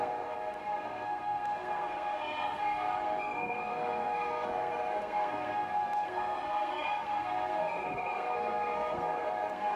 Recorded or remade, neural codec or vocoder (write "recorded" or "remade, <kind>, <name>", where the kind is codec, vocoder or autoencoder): remade, codec, SNAC